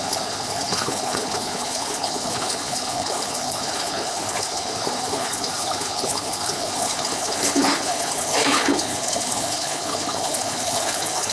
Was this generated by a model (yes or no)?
yes